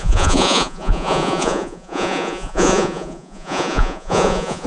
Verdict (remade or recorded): remade